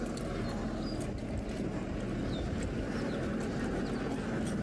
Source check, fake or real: real